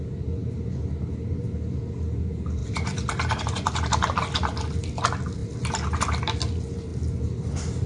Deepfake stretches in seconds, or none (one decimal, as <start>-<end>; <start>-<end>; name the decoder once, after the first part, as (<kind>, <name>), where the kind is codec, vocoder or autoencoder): 2.6-3.4 (vocoder, BigVGAN v2)